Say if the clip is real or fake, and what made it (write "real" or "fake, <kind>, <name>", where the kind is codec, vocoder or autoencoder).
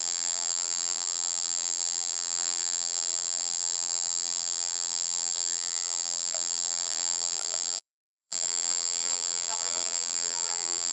fake, vocoder, BigVGAN v2